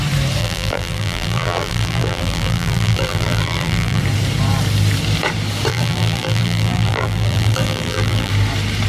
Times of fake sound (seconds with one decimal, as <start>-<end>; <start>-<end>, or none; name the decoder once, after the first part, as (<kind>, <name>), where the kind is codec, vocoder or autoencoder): 0.4-4.0 (vocoder, BigVGAN v2); 5.7-8.3